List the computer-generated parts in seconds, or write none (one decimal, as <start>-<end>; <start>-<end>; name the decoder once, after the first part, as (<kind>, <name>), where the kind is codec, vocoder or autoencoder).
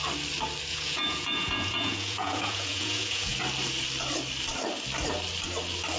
0.7-3.4 (vocoder, Vocos)